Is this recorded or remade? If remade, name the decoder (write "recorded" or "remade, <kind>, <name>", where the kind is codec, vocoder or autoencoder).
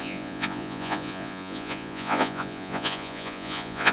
remade, vocoder, Vocos